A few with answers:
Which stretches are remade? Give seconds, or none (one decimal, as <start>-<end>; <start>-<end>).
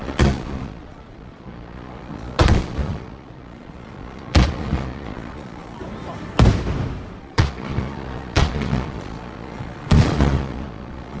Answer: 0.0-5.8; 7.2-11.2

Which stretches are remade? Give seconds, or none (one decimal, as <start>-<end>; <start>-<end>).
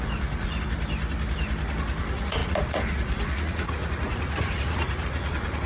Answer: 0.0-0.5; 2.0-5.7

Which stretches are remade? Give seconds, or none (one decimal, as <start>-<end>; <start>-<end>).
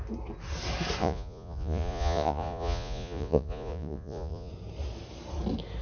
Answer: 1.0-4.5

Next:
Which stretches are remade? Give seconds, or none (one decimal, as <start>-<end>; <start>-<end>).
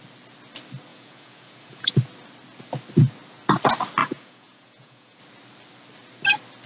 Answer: 0.9-1.9; 4.0-5.2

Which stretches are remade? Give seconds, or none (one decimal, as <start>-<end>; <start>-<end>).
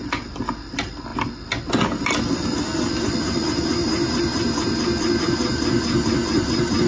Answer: none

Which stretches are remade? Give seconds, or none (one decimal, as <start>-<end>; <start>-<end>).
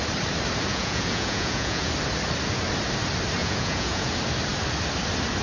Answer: 0.7-1.9; 3.4-4.1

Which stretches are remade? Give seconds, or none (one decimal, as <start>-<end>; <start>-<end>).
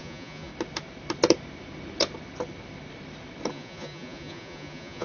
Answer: 0.0-0.5; 3.5-5.0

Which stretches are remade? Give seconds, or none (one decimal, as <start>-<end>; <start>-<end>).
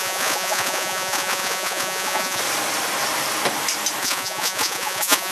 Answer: 0.0-2.4; 4.0-5.3